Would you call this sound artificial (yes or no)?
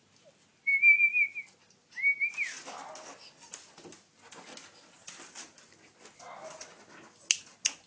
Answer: no